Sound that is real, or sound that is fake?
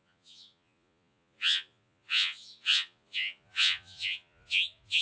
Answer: fake